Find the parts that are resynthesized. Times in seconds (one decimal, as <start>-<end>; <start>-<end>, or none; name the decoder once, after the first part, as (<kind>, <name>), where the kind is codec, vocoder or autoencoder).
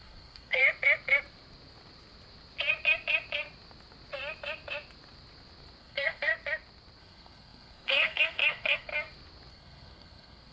0.0-0.6 (codec, SNAC); 5.8-6.3; 7.0-8.9; 9.5-10.5